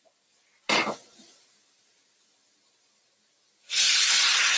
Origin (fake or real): real